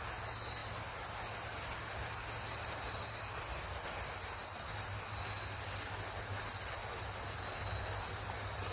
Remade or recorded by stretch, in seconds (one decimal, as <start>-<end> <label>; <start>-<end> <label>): 0.0-8.7 recorded

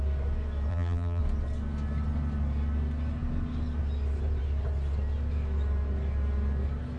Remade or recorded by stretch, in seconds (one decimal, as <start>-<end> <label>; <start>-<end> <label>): 0.0-0.7 recorded; 0.7-1.2 remade; 1.2-7.0 recorded

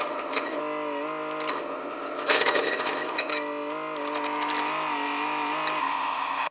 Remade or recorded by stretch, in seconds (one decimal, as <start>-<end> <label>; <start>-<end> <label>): 0.0-0.6 remade; 0.6-1.5 recorded; 1.5-3.3 remade; 3.3-5.8 recorded; 5.8-6.5 remade

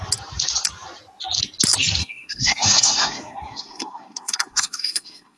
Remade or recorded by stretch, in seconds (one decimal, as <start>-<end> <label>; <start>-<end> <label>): 0.0-2.0 recorded; 2.0-5.4 remade

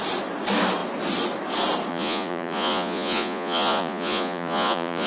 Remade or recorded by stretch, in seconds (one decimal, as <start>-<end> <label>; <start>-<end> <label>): 0.0-1.9 recorded; 1.9-5.1 remade